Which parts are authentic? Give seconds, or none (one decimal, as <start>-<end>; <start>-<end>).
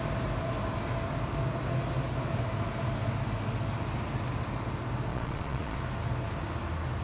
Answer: 0.0-5.1; 5.8-7.0